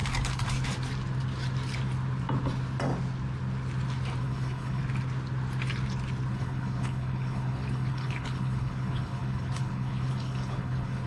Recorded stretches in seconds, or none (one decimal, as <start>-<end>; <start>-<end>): 0.0-4.2; 4.8-6.3